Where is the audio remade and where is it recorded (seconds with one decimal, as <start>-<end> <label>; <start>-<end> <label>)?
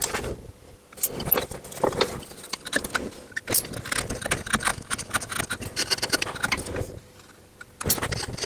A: 0.0-4.7 recorded; 4.7-5.4 remade; 5.4-8.5 recorded